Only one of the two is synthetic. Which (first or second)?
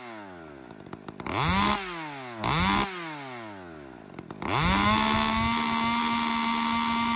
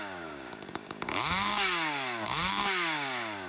second